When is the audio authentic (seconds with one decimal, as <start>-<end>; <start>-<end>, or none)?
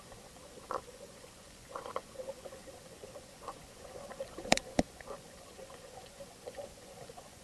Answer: none